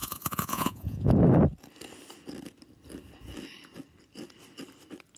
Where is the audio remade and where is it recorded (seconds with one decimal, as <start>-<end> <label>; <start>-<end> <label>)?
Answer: 0.0-1.1 remade; 1.1-5.2 recorded